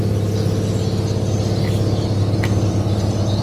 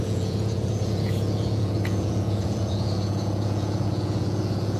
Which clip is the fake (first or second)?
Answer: second